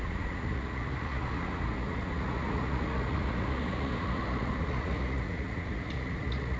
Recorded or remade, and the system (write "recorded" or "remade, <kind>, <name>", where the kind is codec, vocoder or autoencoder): remade, vocoder, Vocos